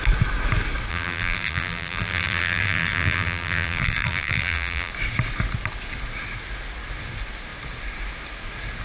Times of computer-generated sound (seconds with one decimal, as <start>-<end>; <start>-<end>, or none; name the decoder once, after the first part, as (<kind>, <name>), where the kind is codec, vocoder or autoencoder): 0.9-4.9 (vocoder, BigVGAN v2)